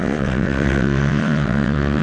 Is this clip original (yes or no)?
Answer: no